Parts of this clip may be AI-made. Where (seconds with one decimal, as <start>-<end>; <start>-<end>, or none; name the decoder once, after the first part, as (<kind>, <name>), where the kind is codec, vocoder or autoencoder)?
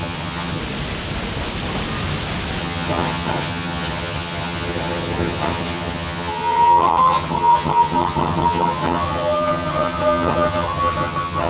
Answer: 0.0-0.6 (vocoder, HiFi-GAN); 2.6-11.5